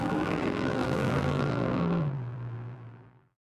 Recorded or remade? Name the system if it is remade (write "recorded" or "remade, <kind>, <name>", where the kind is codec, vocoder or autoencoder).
remade, vocoder, BigVGAN v2